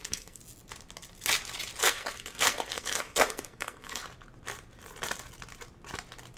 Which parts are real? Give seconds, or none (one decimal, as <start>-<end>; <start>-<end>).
0.4-1.8; 4.0-6.4